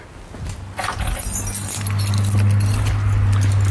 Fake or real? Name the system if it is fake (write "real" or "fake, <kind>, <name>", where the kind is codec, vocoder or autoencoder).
real